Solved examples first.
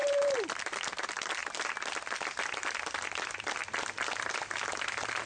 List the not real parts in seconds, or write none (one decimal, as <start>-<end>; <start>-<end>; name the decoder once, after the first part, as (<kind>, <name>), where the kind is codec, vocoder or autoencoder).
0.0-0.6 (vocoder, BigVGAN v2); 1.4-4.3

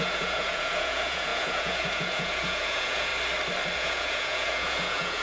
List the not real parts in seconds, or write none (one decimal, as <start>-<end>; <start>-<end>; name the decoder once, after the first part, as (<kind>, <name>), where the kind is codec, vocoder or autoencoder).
0.0-3.1 (vocoder, Vocos); 3.8-5.2

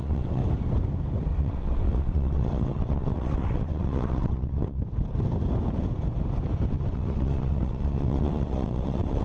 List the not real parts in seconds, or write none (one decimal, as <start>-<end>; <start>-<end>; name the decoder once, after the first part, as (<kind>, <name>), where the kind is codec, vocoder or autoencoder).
0.0-0.4 (vocoder, WaveNeXt); 1.4-4.8; 6.7-9.2